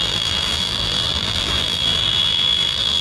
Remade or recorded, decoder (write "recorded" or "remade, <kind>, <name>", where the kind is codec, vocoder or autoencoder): remade, vocoder, BigVGAN v2